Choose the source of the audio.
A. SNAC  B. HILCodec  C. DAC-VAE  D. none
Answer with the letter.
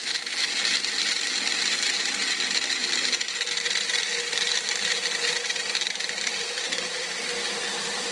D